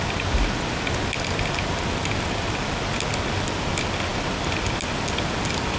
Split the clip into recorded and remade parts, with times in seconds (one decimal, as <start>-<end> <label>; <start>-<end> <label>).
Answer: 0.0-5.8 recorded